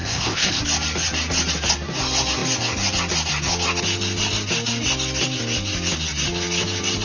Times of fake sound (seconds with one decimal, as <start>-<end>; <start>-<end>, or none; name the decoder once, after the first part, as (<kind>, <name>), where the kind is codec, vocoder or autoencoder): 0.0-0.6 (codec, ZipCodec)